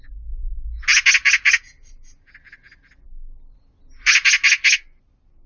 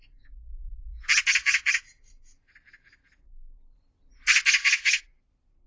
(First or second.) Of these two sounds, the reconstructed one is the second